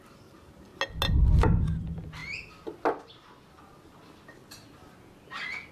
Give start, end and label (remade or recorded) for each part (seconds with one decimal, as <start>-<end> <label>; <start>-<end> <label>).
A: 0.0-5.7 recorded